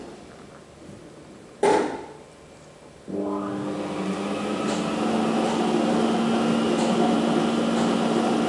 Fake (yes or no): no